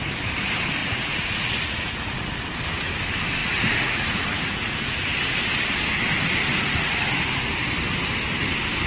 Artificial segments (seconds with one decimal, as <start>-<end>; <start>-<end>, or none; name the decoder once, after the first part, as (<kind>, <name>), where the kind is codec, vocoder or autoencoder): 0.8-2.3 (vocoder, Vocos); 3.4-4.9; 6.4-7.5